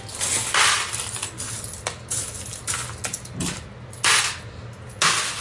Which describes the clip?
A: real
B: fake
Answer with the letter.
A